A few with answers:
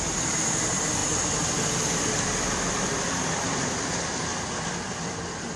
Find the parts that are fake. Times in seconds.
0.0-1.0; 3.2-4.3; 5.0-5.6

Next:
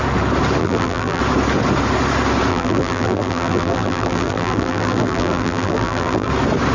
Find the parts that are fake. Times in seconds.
0.6-1.2; 2.5-6.3

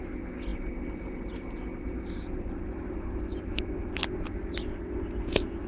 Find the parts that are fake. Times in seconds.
none

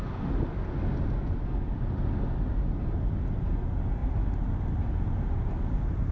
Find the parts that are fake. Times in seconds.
2.5-3.6; 4.0-6.1

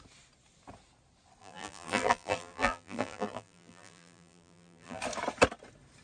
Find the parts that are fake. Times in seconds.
1.4-5.0

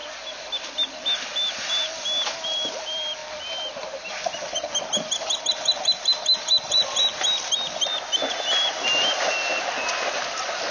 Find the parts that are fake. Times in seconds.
none

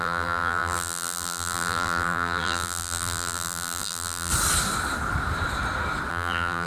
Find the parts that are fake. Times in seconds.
0.0-4.3; 6.1-6.7

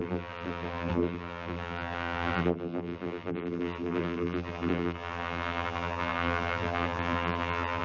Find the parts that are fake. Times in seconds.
0.0-7.8